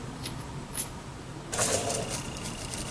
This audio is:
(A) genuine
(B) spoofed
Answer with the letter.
B